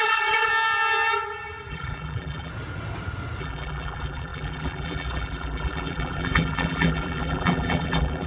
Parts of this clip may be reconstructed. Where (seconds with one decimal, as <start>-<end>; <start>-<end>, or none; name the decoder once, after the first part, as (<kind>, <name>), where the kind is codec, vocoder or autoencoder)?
0.0-0.5 (vocoder, BigVGAN v2); 1.7-2.5; 3.4-8.3